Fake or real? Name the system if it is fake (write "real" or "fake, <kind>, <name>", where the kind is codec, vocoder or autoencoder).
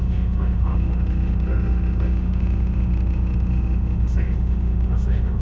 fake, autoencoder, DAC-VAE